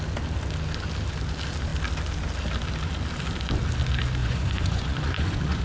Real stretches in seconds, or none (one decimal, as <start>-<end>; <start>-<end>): 0.0-4.2

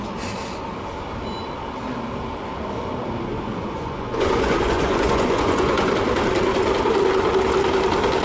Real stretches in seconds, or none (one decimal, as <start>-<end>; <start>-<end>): 0.0-3.3; 5.9-8.2

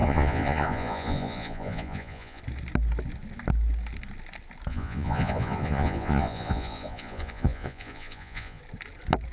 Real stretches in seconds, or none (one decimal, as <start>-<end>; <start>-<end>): 2.4-4.7; 8.6-9.3

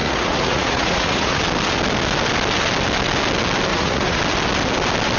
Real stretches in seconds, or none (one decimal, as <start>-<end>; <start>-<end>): 1.4-3.7; 4.2-5.2

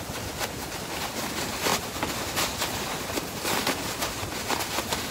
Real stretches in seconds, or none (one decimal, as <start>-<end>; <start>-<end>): 0.0-5.1

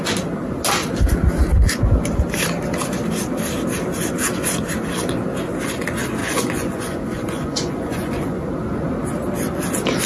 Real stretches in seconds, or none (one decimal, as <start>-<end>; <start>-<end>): 0.0-6.2; 8.5-10.1